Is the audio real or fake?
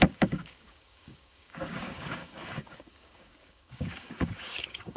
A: fake